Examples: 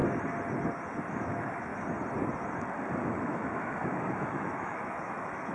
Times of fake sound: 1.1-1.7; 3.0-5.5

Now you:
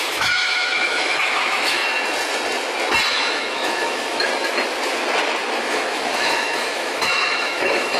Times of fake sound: 0.0-1.8; 3.1-4.3; 5.6-8.0

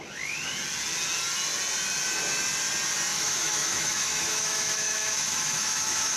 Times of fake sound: 3.1-6.2